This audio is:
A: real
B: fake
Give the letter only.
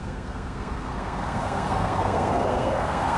B